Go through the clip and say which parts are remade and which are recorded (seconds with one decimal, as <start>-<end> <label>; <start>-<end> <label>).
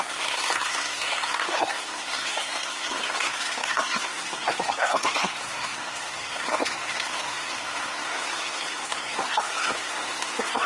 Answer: 0.0-10.7 remade